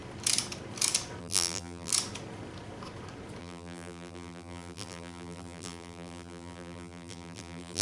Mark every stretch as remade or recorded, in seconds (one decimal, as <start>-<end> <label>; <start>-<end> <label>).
0.0-1.2 recorded; 1.2-1.9 remade; 1.9-3.4 recorded; 3.4-7.8 remade